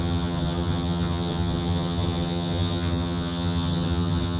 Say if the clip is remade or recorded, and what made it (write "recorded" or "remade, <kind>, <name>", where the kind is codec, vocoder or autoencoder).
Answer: remade, vocoder, HiFi-GAN